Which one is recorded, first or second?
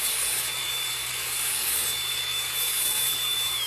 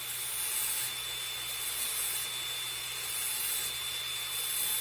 second